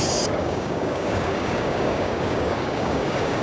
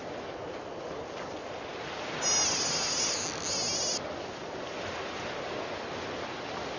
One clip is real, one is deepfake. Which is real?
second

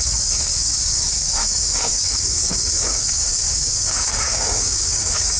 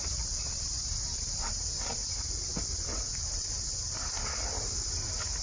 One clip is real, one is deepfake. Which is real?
second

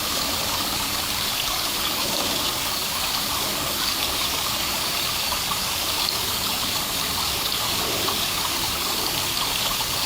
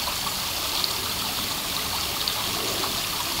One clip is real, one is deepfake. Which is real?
second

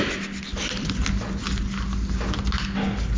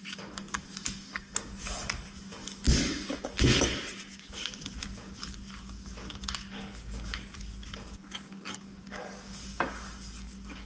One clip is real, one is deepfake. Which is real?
first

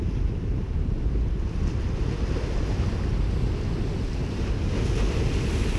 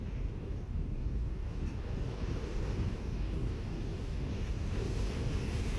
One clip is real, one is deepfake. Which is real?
first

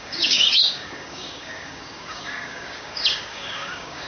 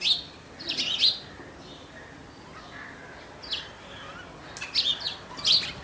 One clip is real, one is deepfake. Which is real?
second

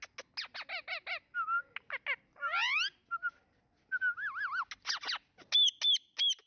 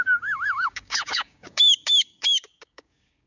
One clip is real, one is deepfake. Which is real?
first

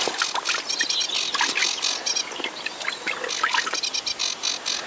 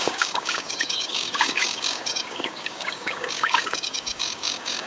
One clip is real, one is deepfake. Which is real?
first